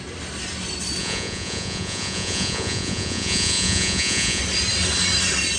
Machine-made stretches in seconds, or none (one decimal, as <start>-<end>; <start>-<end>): 1.0-4.4